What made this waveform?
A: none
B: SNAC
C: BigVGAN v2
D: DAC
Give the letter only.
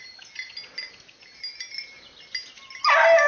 A